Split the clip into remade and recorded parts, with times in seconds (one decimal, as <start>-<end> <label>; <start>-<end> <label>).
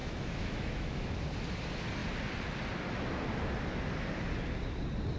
0.0-1.1 remade; 1.1-5.2 recorded